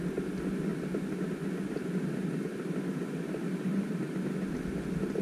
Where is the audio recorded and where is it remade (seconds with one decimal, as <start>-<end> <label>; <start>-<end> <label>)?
0.0-3.7 recorded; 3.7-4.3 remade; 4.3-5.2 recorded